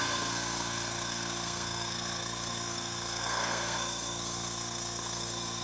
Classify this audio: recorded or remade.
remade